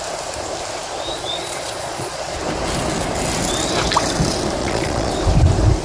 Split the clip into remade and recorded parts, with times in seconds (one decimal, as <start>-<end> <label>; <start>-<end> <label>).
0.0-1.1 recorded; 1.1-2.4 remade; 2.4-4.6 recorded; 4.6-5.1 remade; 5.1-5.8 recorded